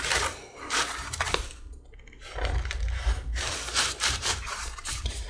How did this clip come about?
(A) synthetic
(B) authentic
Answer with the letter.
A